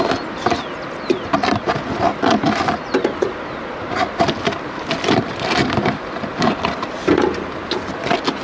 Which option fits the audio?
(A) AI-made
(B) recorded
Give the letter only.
B